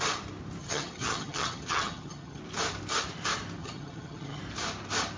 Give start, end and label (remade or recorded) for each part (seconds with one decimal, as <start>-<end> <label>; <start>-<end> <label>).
0.0-0.6 recorded; 0.6-2.4 remade; 2.4-3.6 recorded; 3.6-4.4 remade; 4.4-5.2 recorded